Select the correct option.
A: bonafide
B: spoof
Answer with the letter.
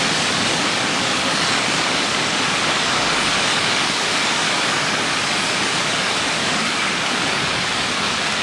B